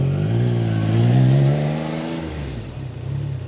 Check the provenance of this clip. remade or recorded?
recorded